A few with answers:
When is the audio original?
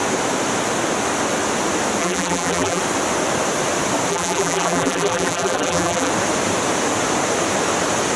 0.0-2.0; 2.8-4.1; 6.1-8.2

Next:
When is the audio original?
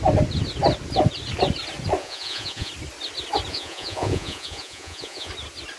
0.0-2.0; 2.7-3.5; 5.3-5.8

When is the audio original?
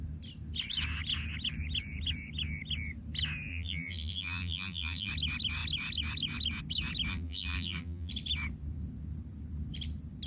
0.0-3.5; 5.1-7.1; 8.1-10.3